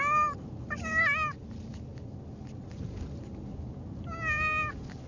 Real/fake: real